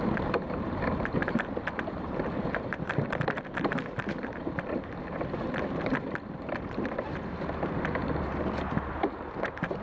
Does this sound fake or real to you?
fake